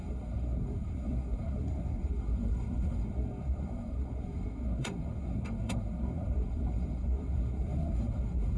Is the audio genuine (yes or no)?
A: no